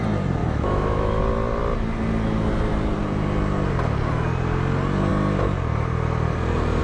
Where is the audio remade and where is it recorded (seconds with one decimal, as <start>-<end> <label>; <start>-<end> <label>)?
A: 0.0-0.4 recorded; 0.4-1.2 remade; 1.2-6.8 recorded